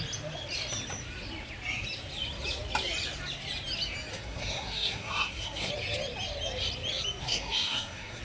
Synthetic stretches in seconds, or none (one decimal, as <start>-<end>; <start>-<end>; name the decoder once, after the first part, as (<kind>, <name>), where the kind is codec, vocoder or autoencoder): 4.1-5.7 (codec, SNAC); 7.2-8.2